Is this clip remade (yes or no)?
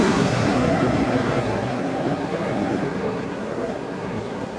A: yes